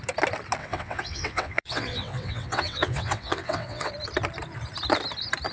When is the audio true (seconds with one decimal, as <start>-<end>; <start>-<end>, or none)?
0.0-0.6; 3.9-5.5